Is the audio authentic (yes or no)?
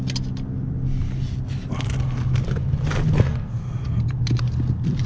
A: yes